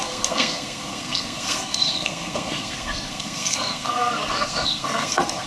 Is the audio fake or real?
fake